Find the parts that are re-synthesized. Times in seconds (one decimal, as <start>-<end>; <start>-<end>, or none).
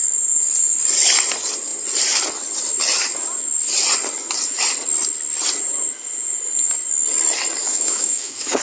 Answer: 7.6-8.6